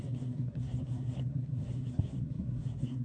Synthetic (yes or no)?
yes